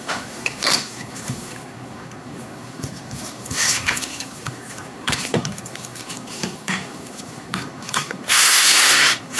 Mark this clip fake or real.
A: fake